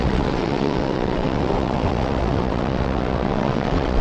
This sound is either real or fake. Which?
fake